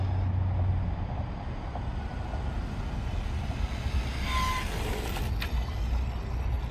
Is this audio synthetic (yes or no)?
no